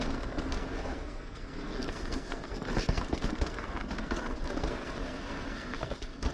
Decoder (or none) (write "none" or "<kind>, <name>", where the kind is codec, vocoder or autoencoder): codec, SNAC